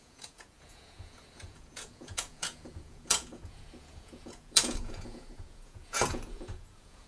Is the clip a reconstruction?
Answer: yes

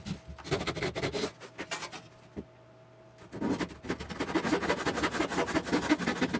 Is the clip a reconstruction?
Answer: no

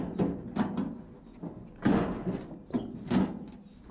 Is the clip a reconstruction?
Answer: no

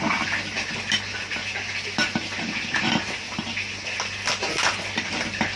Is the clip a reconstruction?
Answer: no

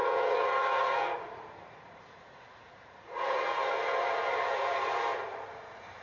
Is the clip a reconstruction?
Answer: yes